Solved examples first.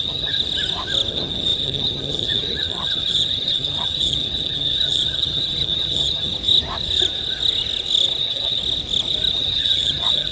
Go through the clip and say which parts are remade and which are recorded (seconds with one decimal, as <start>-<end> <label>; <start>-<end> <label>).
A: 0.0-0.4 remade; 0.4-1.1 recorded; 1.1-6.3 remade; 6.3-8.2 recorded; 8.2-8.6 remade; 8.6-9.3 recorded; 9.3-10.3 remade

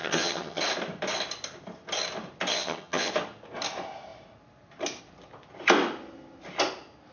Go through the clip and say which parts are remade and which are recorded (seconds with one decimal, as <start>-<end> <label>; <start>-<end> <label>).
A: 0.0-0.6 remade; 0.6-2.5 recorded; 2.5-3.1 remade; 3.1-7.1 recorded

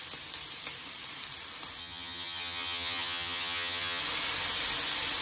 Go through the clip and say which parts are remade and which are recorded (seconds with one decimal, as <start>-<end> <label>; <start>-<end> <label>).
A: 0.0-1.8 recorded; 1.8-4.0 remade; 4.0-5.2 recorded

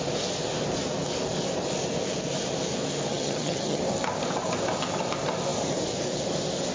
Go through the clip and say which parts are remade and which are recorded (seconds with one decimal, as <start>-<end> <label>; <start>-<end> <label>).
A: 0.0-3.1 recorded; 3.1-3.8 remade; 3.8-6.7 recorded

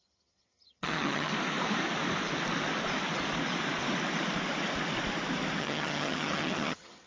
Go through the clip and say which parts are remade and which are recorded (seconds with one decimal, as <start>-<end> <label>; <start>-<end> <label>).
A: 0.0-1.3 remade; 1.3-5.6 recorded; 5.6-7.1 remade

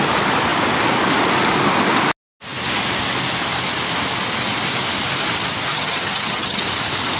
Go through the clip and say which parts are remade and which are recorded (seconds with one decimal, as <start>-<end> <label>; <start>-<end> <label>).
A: 0.0-5.7 recorded; 5.7-6.6 remade; 6.6-7.2 recorded